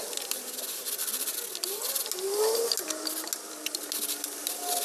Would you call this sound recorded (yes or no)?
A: yes